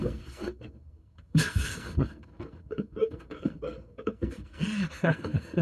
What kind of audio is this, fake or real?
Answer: fake